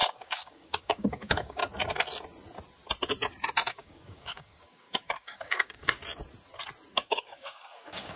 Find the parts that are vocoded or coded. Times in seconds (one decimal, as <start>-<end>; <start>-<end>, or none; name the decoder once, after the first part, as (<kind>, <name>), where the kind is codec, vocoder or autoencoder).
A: 0.0-1.6 (codec, DAC); 3.7-6.0; 6.9-8.2